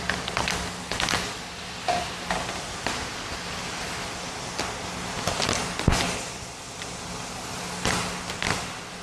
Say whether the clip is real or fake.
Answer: real